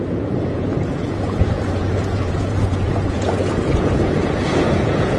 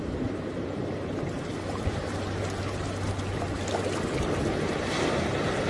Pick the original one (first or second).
second